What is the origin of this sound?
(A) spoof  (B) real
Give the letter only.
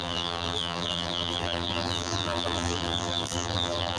A